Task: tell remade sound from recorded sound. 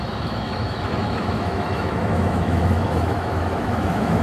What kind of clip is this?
remade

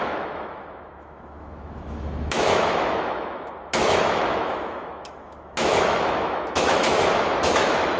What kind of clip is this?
remade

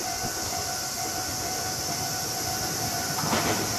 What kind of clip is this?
recorded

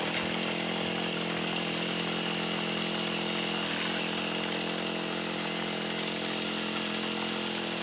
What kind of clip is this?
recorded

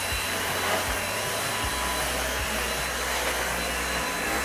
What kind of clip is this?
recorded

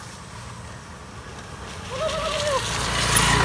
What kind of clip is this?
recorded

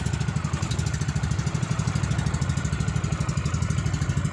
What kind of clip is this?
recorded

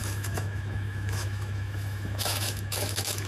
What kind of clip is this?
remade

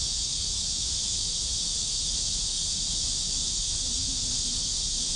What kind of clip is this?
remade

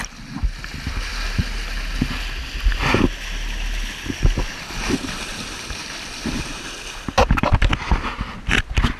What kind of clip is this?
recorded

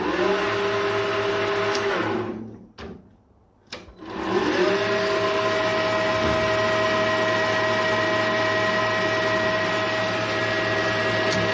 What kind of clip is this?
recorded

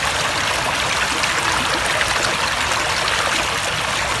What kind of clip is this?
recorded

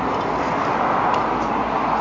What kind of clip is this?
recorded